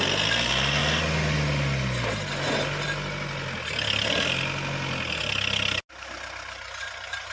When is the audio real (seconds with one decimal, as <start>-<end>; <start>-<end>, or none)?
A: 0.0-7.3